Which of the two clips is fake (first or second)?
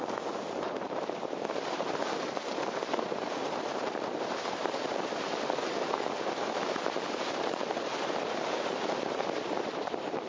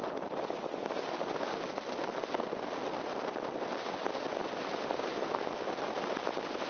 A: first